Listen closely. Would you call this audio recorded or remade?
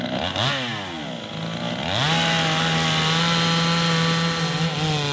recorded